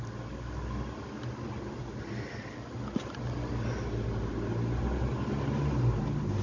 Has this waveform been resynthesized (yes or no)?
no